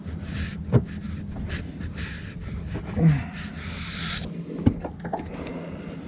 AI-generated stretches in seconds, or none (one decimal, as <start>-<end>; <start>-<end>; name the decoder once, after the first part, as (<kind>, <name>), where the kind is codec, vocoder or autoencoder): none